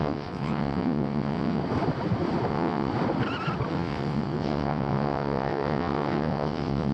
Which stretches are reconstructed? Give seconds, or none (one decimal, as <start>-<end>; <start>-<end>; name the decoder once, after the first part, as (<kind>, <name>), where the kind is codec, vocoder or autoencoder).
0.0-1.6 (vocoder, WaveNeXt); 2.5-2.9; 3.7-6.9